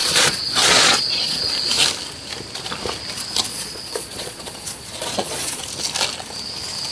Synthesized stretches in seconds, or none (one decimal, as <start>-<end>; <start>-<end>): 0.0-1.5; 3.5-5.6